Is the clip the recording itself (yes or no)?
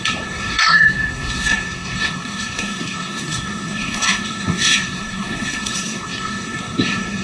no